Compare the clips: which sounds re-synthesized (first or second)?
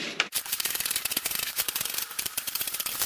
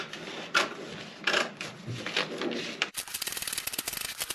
first